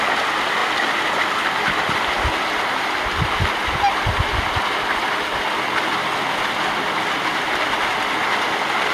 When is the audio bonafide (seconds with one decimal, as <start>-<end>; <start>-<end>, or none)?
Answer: 0.0-8.9